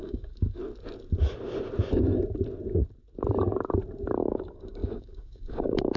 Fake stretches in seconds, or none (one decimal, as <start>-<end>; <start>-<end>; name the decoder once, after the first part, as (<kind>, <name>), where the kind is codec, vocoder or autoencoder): 0.0-0.6 (codec, DAC); 4.2-6.0